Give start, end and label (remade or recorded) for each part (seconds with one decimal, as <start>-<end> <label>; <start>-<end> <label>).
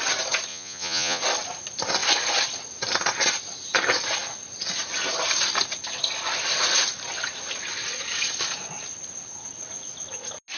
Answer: 0.0-0.5 recorded; 0.5-1.2 remade; 1.2-10.6 recorded